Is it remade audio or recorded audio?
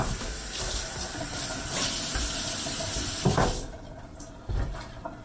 remade